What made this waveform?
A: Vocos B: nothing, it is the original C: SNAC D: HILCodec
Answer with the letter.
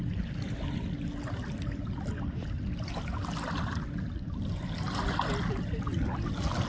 B